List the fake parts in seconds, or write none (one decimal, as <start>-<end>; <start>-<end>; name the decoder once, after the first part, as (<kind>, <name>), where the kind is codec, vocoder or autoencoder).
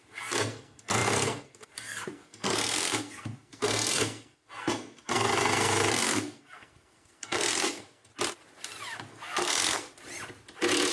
0.0-8.1 (codec, SNAC); 9.1-9.9